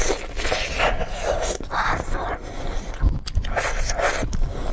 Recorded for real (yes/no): yes